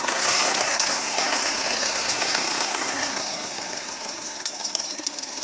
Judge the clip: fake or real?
fake